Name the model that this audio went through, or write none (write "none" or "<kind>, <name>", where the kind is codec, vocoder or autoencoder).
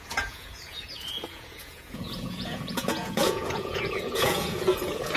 vocoder, Vocos